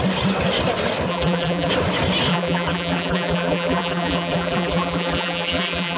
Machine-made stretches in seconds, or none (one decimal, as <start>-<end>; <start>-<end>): 1.1-1.7; 2.3-6.0